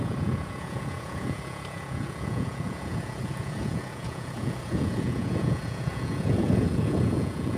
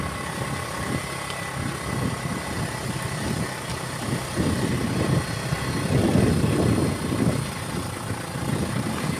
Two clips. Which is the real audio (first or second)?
second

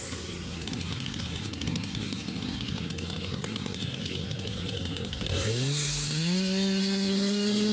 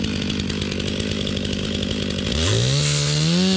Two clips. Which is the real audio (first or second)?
second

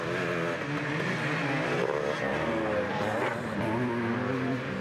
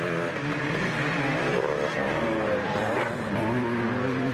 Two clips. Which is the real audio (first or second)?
first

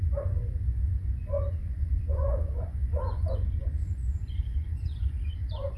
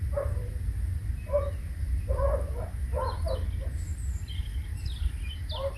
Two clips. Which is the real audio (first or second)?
second